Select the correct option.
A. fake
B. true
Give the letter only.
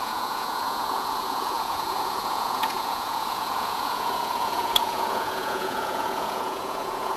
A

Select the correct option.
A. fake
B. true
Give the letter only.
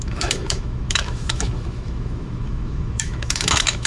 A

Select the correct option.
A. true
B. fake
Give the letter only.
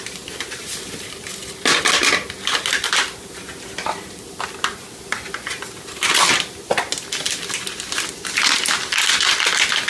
A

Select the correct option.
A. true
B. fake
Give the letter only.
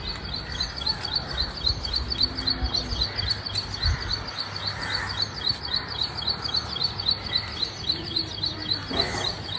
A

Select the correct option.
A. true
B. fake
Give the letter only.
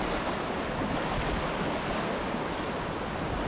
A